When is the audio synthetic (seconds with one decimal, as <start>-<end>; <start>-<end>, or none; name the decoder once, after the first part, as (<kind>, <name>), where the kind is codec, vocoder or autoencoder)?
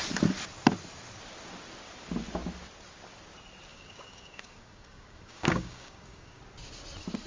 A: 3.7-6.4 (codec, DAC)